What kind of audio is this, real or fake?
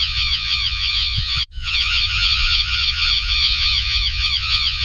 fake